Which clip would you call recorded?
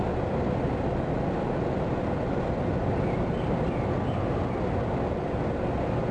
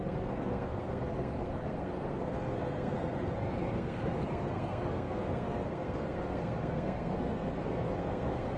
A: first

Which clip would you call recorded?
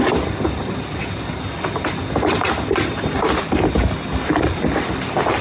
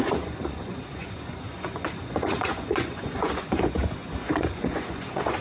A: first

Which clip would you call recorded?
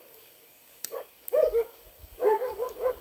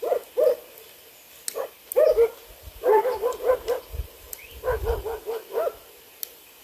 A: second